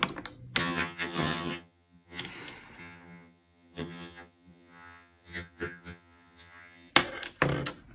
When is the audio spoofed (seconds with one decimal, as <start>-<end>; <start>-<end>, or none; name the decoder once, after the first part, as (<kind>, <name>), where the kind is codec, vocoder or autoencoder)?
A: 0.6-2.2 (vocoder, HiFi-GAN); 2.8-6.9